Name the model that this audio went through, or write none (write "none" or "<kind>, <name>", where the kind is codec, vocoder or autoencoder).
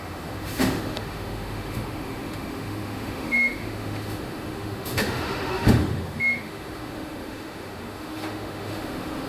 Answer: autoencoder, DAC-VAE